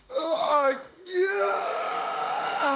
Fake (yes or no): yes